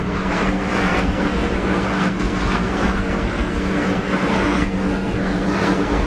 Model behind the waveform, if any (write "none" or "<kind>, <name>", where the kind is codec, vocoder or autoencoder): codec, SNAC